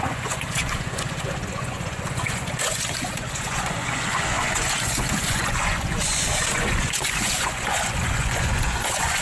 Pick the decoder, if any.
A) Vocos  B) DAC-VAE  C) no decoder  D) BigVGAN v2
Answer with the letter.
A